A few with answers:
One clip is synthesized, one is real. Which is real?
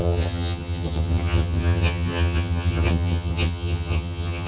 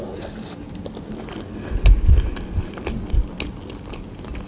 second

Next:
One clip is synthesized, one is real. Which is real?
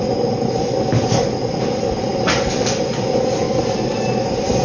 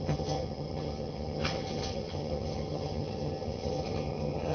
first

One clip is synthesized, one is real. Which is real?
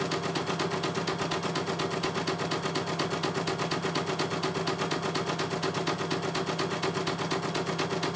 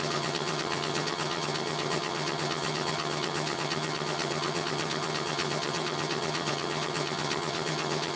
first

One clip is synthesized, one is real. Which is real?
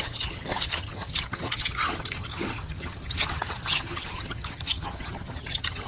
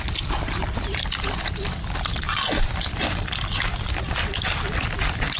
second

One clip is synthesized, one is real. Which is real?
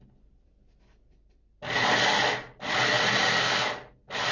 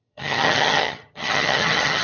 first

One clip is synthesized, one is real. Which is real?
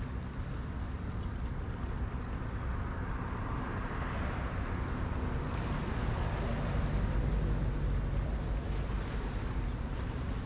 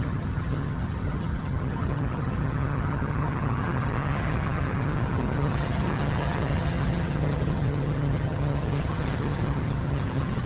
first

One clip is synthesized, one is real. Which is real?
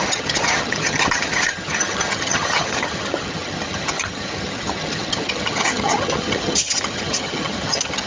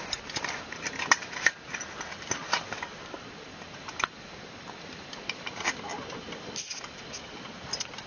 second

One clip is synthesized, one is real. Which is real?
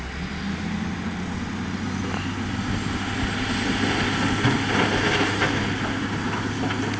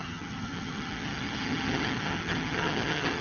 first